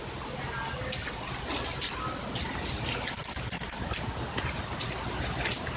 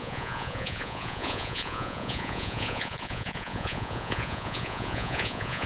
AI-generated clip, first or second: second